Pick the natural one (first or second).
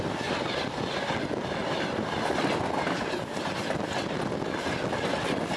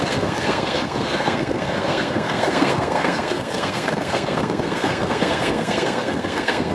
first